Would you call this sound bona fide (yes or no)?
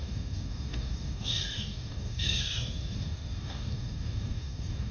no